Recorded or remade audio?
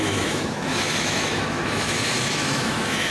remade